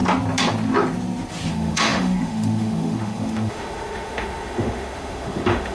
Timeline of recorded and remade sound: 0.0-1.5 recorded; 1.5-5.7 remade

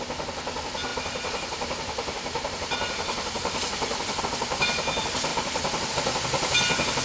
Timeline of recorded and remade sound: 0.0-0.9 recorded; 0.9-4.2 remade; 4.2-5.3 recorded; 5.3-5.9 remade; 5.9-7.0 recorded

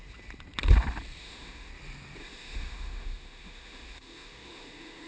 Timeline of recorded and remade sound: 0.0-1.2 recorded; 1.2-1.7 remade; 1.7-2.2 recorded; 2.2-5.1 remade

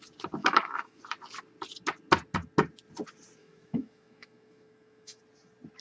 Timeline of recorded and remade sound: 0.0-0.4 recorded; 0.4-1.0 remade; 1.0-3.4 recorded; 3.4-5.2 remade; 5.2-5.8 recorded